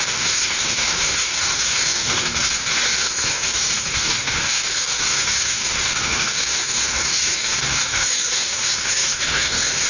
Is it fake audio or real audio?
fake